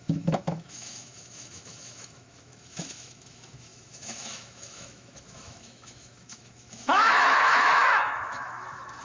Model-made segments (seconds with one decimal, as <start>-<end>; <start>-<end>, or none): 0.0-9.0